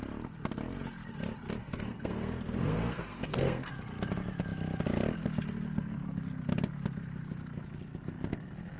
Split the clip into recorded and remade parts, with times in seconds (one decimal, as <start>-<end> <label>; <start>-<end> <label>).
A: 0.0-1.6 recorded; 1.6-3.7 remade; 3.7-8.8 recorded